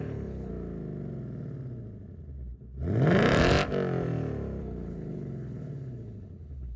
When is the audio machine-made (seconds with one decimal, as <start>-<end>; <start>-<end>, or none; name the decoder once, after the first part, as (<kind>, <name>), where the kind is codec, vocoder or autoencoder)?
0.0-0.5 (codec, HILCodec); 4.6-6.8